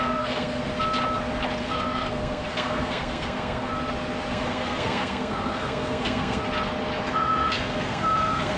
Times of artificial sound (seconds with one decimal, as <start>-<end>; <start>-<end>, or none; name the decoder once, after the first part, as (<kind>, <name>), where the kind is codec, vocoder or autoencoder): 0.0-0.7 (codec, SNAC); 1.6-3.7; 4.3-6.4; 7.1-8.6